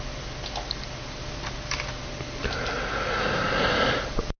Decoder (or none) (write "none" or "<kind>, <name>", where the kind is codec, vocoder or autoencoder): none